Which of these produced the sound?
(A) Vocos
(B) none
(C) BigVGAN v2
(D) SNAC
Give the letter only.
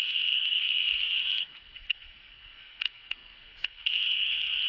D